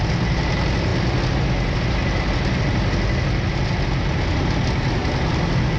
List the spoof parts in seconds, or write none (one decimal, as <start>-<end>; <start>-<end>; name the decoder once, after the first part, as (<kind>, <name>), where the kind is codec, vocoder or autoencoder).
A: 5.0-5.8 (vocoder, BigVGAN v2)